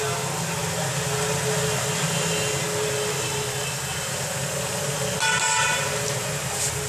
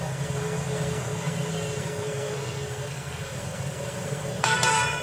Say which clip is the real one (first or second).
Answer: first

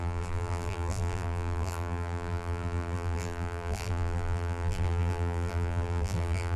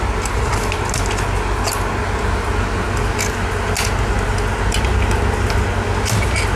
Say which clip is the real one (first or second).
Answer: second